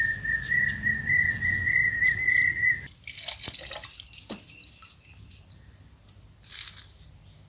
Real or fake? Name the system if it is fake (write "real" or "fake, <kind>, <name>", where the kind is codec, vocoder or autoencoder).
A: real